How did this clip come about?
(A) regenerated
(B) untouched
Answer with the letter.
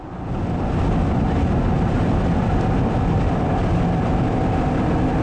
B